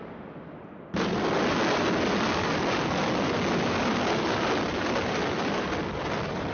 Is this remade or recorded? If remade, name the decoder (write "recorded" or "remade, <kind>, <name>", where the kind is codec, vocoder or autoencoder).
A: remade, vocoder, BigVGAN v2